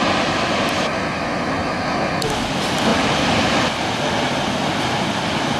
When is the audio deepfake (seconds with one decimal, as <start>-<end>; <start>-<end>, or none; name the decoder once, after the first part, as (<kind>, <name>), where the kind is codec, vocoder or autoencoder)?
none